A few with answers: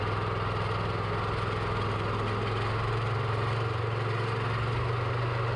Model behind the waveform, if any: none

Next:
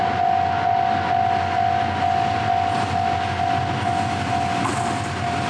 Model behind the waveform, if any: none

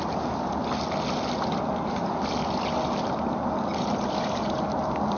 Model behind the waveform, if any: none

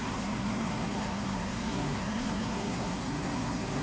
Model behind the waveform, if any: codec, SNAC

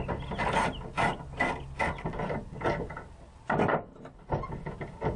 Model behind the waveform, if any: none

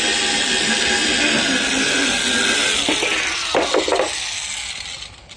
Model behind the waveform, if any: none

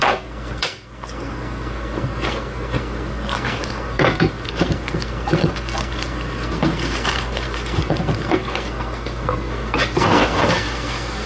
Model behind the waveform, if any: codec, SNAC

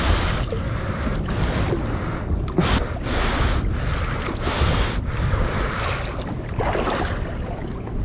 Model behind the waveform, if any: none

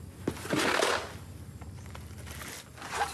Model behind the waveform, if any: none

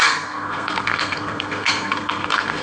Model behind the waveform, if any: codec, SNAC